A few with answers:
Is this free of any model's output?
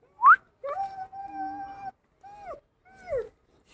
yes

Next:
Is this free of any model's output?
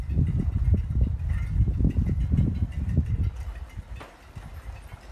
yes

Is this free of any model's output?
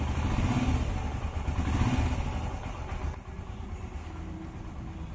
yes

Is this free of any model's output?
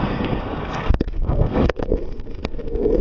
no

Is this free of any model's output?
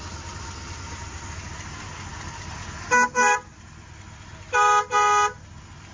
yes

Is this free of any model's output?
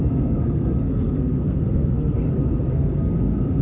no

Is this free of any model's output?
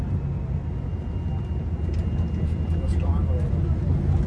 yes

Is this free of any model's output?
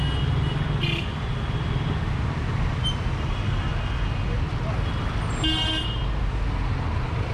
yes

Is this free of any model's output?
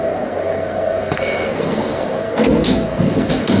no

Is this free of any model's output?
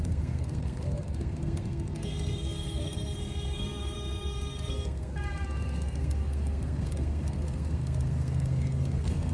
no